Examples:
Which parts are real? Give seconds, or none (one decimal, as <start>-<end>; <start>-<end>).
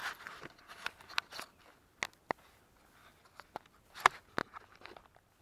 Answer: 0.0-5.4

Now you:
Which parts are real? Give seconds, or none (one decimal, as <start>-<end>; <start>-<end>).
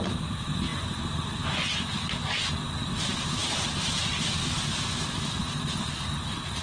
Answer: 0.0-6.6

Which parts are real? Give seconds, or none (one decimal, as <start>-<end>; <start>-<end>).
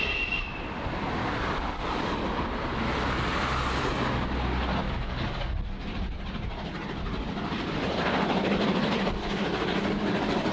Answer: 0.0-1.2; 1.8-4.8; 5.5-10.5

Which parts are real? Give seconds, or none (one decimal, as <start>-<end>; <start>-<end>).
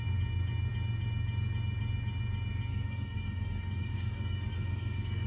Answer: 0.0-2.7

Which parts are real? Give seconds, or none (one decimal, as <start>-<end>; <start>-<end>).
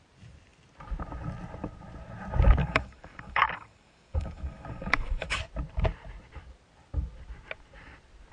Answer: 0.0-2.6; 5.4-8.3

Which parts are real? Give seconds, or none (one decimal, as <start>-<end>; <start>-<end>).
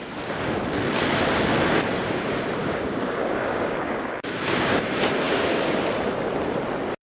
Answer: 0.0-2.6; 4.8-7.1